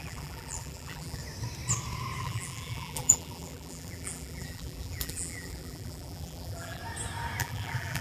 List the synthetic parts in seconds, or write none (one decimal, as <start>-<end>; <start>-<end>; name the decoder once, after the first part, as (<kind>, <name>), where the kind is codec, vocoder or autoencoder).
0.0-1.2 (vocoder, BigVGAN v2); 2.2-6.8; 7.4-8.0